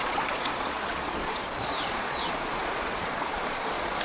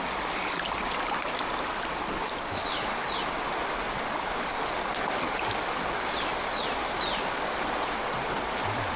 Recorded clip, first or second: second